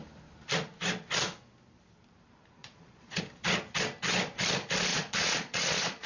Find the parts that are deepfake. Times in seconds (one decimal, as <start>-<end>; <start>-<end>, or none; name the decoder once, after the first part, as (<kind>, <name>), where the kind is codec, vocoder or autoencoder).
2.6-3.2 (vocoder, Vocos); 4.9-6.1

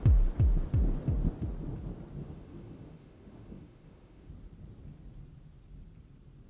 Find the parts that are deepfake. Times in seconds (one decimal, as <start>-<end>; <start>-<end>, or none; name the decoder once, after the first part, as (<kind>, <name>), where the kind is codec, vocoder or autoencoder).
2.2-4.3 (autoencoder, DAC-VAE)

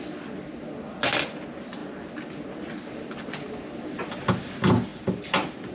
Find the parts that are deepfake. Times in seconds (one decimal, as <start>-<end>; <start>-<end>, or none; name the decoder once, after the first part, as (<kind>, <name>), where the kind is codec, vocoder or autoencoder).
none

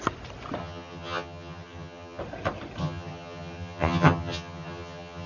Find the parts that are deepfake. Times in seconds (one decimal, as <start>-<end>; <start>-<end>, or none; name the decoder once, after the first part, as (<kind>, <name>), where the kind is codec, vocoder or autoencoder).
0.6-2.2 (vocoder, HiFi-GAN); 2.8-5.3